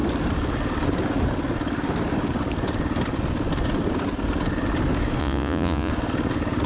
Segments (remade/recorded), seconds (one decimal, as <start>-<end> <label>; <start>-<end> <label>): 0.0-5.2 recorded; 5.2-5.9 remade; 5.9-6.7 recorded